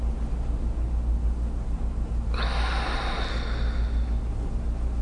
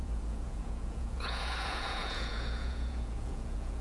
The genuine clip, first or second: first